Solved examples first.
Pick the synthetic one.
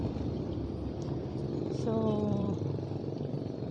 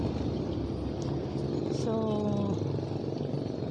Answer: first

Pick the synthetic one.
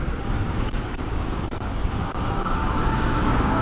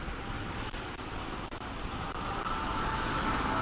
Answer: first